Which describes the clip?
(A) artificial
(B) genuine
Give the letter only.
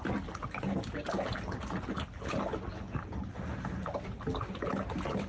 B